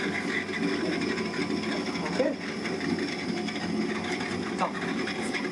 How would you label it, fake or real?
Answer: real